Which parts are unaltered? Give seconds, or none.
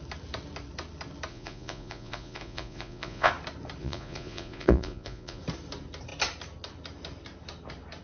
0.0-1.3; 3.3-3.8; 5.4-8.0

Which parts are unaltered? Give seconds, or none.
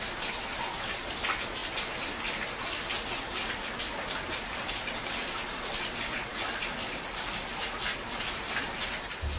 0.0-9.4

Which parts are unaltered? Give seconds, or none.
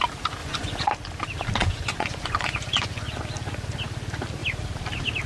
0.0-0.4; 0.9-1.6; 3.1-5.3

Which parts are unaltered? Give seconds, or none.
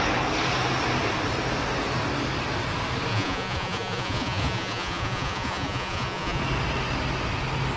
0.0-3.1; 6.4-7.8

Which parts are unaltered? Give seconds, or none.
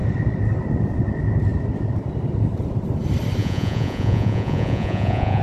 0.0-3.4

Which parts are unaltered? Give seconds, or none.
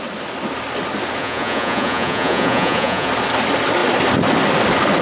0.0-1.2; 3.1-5.0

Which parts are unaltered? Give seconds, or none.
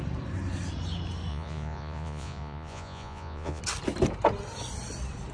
0.0-1.3; 3.6-5.3